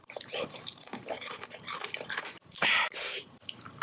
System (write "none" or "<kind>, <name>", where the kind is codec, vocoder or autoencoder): vocoder, BigVGAN v2